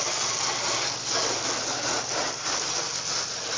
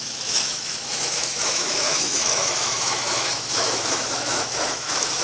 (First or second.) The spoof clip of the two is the second